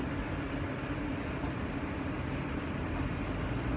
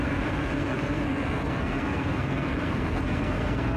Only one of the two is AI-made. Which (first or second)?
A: second